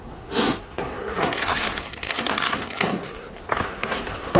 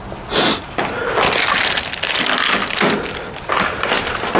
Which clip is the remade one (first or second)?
first